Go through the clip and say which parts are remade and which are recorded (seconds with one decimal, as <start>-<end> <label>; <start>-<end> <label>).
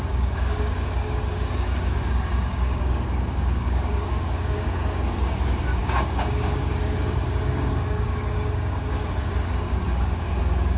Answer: 0.0-10.8 remade